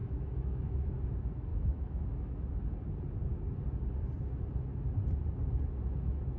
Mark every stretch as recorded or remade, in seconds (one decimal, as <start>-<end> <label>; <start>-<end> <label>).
0.0-0.9 remade; 0.9-1.5 recorded; 1.5-2.5 remade; 2.5-6.4 recorded